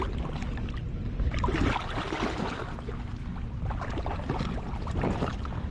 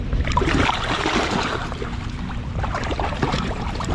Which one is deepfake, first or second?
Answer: second